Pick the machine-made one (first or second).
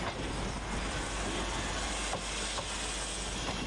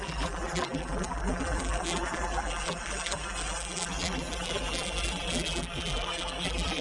second